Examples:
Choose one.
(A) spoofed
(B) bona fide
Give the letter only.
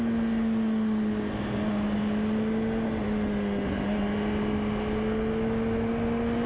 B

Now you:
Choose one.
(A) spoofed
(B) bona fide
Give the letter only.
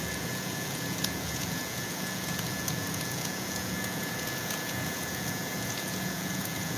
A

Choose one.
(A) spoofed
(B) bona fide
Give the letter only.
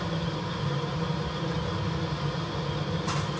B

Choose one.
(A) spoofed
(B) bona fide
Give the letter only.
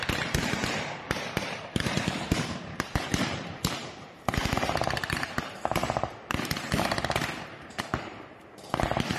A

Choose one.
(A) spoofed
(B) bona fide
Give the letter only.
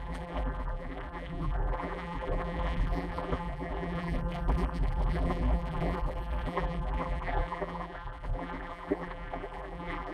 A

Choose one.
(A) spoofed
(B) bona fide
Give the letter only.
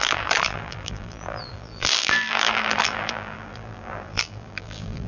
A